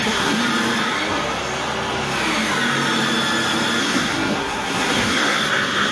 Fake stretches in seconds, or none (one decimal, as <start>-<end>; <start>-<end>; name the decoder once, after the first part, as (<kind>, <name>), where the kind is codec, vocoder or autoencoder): 0.0-0.4 (codec, SNAC); 3.8-5.9